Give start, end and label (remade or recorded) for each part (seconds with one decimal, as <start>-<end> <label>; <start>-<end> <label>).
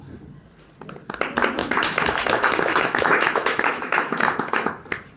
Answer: 0.0-1.6 recorded; 1.6-4.7 remade; 4.7-5.2 recorded